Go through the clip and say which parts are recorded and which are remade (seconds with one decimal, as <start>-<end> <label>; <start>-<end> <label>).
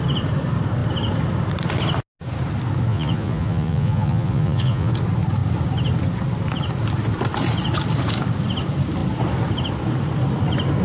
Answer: 0.0-2.9 recorded; 2.9-4.9 remade; 4.9-10.8 recorded